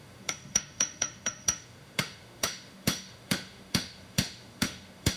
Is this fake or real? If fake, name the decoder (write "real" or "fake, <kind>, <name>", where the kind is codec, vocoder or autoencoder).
fake, autoencoder, DAC-VAE